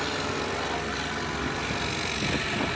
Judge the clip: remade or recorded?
recorded